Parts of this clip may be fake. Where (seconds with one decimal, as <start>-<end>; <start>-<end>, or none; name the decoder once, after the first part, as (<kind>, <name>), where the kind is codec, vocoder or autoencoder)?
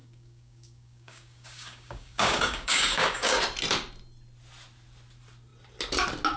0.0-3.4 (codec, DAC)